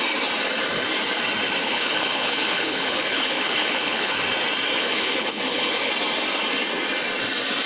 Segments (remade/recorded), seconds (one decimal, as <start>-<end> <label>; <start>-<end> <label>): 0.0-1.6 recorded; 1.6-4.1 remade; 4.1-4.8 recorded; 4.8-5.9 remade; 5.9-7.7 recorded